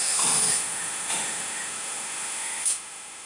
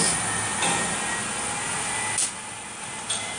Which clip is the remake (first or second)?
first